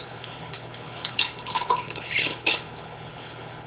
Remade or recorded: remade